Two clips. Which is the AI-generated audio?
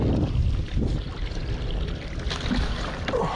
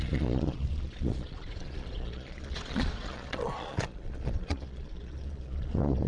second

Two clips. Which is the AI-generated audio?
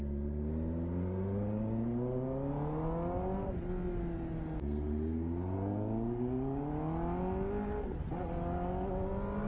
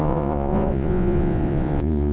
second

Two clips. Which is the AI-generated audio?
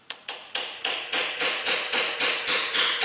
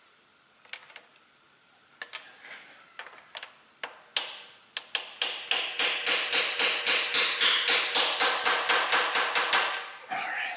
first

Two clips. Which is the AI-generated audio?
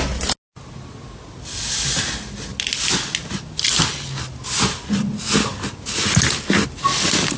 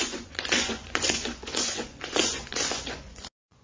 second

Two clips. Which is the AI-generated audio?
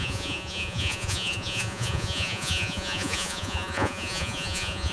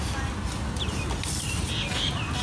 first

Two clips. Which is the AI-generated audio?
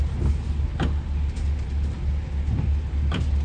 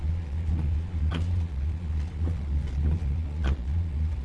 second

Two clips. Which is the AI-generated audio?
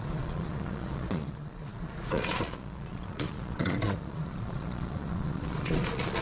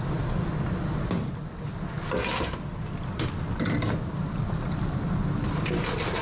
first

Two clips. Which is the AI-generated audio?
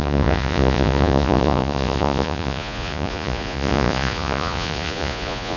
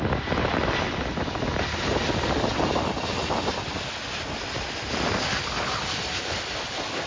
first